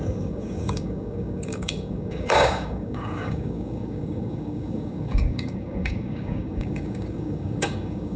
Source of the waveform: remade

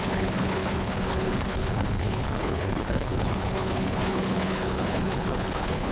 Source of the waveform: remade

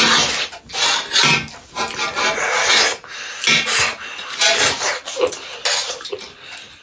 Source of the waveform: recorded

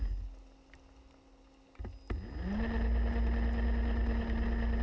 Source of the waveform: recorded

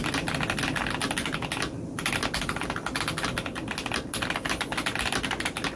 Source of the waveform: recorded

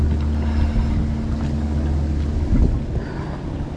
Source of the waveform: recorded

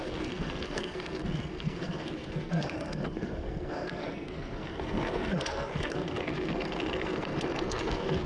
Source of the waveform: remade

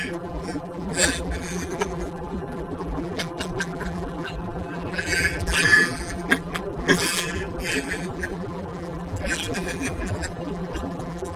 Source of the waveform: remade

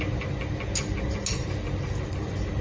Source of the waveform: recorded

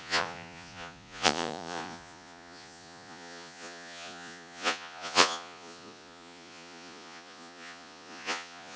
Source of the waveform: remade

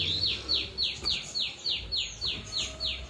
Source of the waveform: recorded